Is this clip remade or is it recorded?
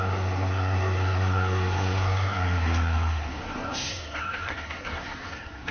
remade